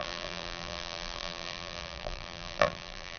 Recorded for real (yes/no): no